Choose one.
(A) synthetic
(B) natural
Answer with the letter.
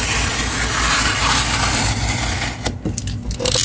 B